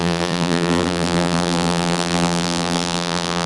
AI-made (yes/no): yes